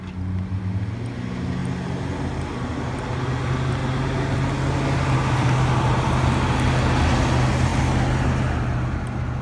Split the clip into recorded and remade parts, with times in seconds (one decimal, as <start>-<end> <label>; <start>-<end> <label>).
0.0-9.4 recorded